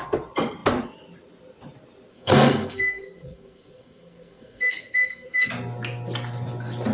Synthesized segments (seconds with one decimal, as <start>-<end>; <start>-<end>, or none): 2.1-5.5